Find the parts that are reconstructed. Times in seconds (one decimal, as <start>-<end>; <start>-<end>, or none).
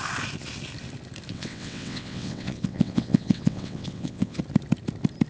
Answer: 1.3-4.4